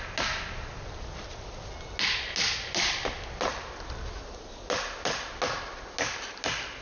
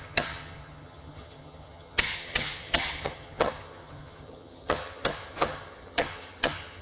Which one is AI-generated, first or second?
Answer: second